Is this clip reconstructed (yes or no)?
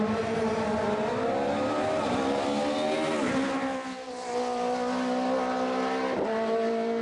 no